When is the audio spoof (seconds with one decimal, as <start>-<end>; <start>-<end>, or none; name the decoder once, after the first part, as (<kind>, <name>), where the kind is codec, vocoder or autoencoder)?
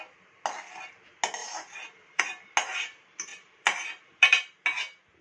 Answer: 1.4-2.2 (vocoder, BigVGAN v2); 3.3-4.6